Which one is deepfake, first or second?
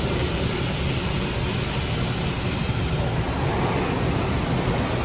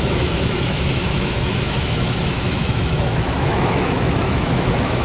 second